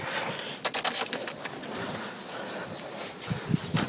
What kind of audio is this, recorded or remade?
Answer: recorded